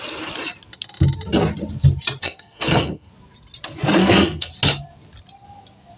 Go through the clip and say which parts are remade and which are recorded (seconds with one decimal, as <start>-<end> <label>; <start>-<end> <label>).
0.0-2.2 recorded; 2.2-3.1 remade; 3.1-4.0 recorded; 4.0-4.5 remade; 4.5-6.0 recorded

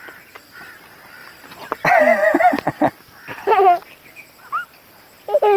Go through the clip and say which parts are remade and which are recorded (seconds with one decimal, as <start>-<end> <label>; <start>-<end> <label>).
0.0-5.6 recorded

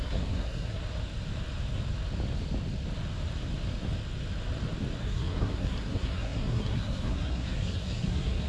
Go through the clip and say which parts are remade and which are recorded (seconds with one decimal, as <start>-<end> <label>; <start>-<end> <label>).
0.0-0.8 remade; 0.8-5.0 recorded; 5.0-8.5 remade

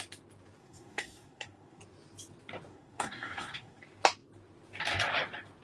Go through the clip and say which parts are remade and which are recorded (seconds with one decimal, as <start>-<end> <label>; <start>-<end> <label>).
0.0-0.6 recorded; 0.6-1.8 remade; 1.8-2.7 recorded; 2.7-3.8 remade; 3.8-5.6 recorded

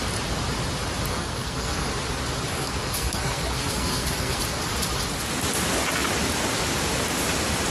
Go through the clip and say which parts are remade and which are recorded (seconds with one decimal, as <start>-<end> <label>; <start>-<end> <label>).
0.0-1.1 recorded; 1.1-1.9 remade; 1.9-2.5 recorded; 2.5-4.4 remade; 4.4-7.7 recorded

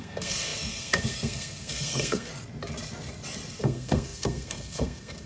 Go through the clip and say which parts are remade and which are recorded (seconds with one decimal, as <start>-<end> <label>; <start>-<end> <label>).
0.0-2.3 remade; 2.3-3.6 recorded; 3.6-5.3 remade

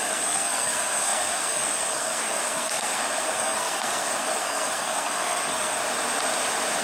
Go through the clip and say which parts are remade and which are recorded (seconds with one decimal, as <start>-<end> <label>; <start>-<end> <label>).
0.0-5.8 remade; 5.8-6.8 recorded

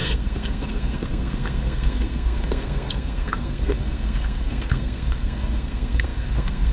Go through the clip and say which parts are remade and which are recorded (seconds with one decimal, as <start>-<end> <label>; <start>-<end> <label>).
0.0-6.7 remade